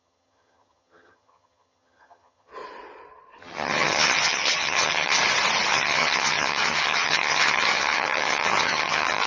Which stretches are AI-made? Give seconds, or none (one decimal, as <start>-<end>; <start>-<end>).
0.0-2.5; 3.4-5.2; 5.7-9.3